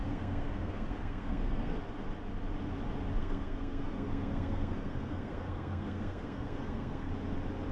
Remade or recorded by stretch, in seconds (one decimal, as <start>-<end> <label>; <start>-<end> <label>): 0.0-1.8 remade; 1.8-3.2 recorded; 3.2-7.1 remade; 7.1-7.7 recorded